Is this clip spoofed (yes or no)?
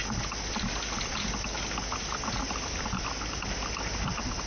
no